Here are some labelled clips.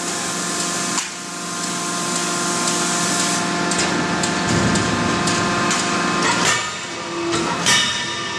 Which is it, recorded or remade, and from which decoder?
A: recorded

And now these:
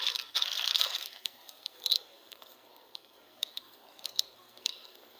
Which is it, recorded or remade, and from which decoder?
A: remade, codec, SNAC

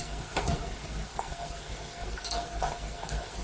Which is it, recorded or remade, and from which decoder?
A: remade, codec, SNAC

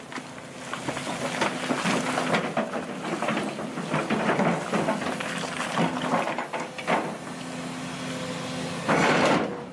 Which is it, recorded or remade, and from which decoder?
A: recorded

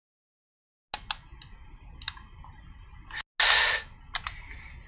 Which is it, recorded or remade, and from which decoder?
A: recorded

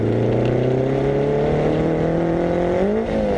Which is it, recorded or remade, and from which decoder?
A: recorded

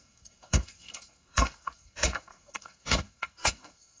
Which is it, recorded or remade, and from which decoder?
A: remade, codec, SNAC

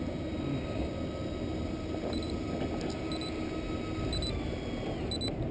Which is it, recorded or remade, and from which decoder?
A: recorded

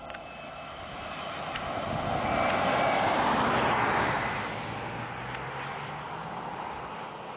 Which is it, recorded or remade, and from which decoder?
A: recorded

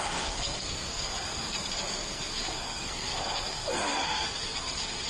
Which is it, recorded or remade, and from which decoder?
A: remade, codec, SNAC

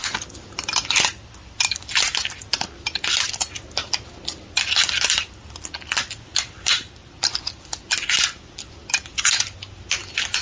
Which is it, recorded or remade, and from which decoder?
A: recorded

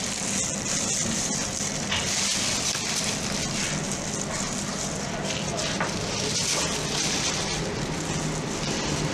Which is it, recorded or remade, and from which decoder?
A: recorded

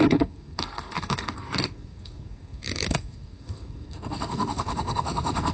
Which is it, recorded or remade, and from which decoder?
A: remade, codec, SNAC